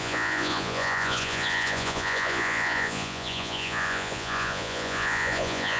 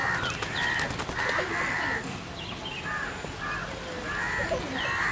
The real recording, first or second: second